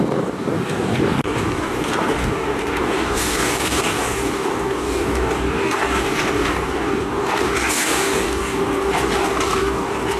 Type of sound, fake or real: fake